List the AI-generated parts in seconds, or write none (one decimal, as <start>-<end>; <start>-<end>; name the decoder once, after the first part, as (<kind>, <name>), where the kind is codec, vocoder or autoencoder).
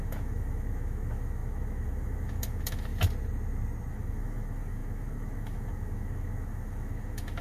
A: 0.0-2.9 (autoencoder, DAC-VAE); 3.9-7.4